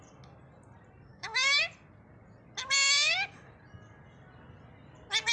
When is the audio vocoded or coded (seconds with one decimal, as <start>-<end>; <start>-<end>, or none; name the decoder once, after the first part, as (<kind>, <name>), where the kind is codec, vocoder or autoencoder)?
1.1-1.6 (autoencoder, DAC-VAE)

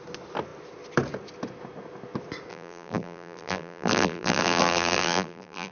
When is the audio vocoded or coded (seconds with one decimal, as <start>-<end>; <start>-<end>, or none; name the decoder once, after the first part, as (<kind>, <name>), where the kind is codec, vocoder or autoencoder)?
2.5-5.7 (vocoder, BigVGAN v2)

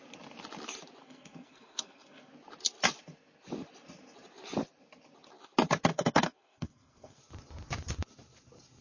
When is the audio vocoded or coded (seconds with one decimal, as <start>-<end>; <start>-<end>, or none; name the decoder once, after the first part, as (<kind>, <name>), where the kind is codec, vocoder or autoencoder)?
1.0-2.3 (codec, SNAC); 5.9-7.2

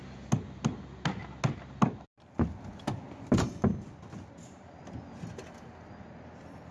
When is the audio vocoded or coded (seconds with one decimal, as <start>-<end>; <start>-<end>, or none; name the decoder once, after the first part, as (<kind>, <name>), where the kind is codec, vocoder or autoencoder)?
none

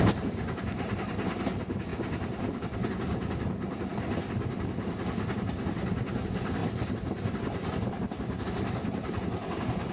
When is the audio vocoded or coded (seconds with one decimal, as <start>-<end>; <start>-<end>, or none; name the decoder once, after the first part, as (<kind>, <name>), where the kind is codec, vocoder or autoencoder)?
none